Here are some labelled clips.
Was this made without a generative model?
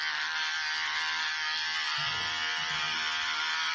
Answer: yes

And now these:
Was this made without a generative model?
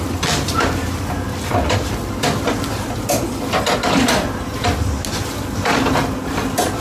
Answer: yes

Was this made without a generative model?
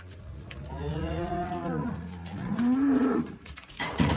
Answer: no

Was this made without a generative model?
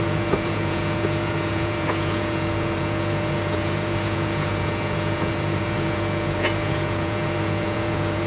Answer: no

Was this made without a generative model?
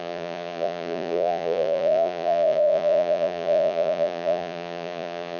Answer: no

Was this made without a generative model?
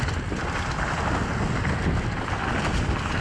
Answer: yes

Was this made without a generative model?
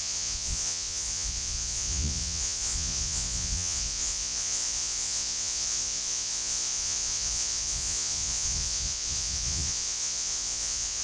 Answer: no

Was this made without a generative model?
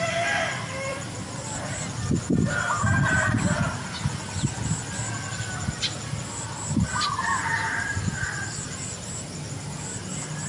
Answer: yes